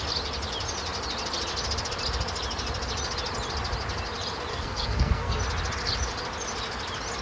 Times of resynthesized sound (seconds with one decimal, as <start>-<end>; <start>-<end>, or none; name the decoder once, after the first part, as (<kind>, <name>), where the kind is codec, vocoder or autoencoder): 4.5-5.4 (codec, SNAC)